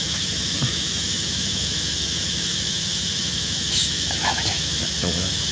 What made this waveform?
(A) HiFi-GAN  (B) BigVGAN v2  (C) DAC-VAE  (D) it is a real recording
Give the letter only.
C